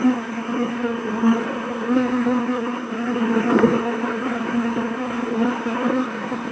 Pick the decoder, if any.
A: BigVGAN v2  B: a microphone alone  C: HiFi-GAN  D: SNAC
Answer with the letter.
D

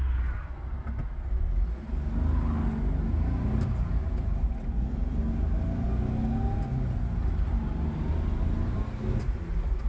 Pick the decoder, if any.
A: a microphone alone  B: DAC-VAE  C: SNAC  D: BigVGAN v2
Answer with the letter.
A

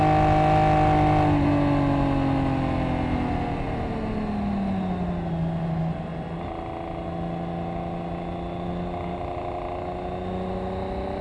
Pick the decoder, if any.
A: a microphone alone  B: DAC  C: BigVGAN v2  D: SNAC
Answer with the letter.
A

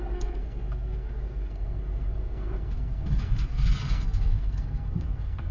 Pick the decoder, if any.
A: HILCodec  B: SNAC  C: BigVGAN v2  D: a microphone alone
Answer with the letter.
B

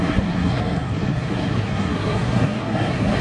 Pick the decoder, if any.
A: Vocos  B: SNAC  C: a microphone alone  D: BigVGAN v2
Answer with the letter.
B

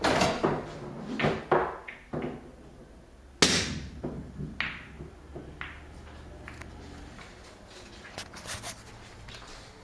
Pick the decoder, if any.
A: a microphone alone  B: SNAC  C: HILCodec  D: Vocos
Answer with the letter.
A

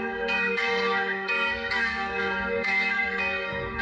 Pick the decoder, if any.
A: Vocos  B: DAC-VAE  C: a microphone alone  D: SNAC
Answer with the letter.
D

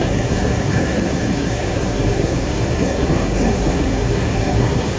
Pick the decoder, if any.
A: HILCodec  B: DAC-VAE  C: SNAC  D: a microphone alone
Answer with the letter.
C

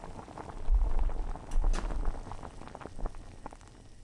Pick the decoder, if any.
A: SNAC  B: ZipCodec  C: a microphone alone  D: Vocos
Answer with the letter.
C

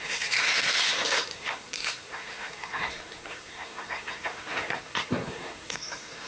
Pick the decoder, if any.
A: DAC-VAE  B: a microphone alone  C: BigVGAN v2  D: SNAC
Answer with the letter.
D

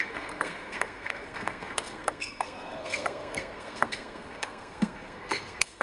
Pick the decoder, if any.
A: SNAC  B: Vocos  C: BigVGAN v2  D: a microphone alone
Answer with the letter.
A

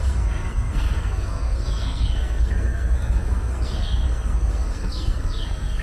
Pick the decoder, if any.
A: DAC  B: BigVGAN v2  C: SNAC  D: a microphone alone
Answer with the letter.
C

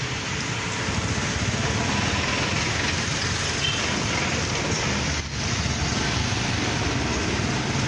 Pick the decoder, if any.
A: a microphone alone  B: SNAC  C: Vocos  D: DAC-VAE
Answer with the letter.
A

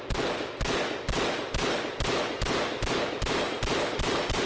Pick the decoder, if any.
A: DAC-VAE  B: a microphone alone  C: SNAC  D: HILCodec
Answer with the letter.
B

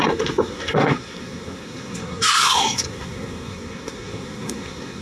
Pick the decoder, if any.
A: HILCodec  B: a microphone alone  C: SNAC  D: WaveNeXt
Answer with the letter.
C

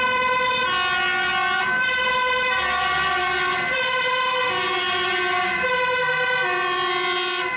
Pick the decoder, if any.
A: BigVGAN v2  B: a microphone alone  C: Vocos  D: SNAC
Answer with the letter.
B